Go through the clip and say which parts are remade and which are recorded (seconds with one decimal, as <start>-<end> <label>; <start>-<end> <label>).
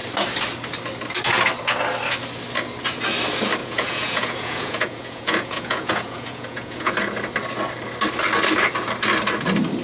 0.0-3.6 recorded; 3.6-6.9 remade; 6.9-9.8 recorded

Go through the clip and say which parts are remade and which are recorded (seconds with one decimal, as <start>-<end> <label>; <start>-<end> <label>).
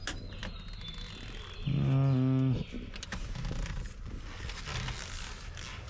0.0-5.9 recorded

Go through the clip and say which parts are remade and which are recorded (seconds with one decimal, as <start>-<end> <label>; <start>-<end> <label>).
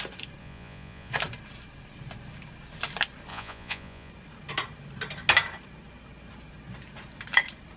0.0-0.4 recorded; 0.4-1.1 remade; 1.1-3.3 recorded; 3.3-4.1 remade; 4.1-7.8 recorded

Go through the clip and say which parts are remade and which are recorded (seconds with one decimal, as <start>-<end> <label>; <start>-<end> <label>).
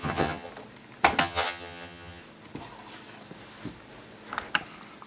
0.0-0.5 remade; 0.5-1.2 recorded; 1.2-2.2 remade; 2.2-5.1 recorded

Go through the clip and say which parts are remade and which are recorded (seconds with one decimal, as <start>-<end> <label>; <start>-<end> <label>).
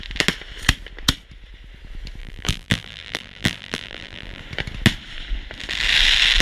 0.0-2.2 recorded; 2.2-4.4 remade; 4.4-6.4 recorded